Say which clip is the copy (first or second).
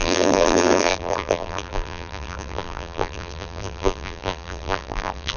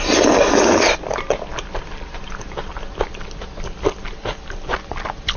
first